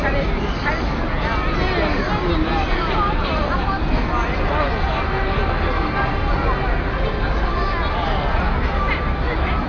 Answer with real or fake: real